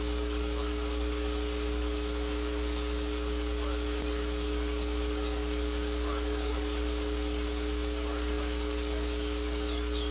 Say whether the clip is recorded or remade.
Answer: remade